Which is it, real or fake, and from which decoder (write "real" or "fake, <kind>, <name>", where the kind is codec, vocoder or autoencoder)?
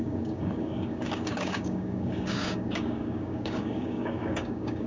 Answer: fake, codec, DAC